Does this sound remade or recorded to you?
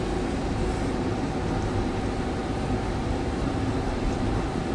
recorded